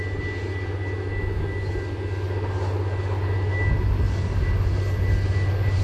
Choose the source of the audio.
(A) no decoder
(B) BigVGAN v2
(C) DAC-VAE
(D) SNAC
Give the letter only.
A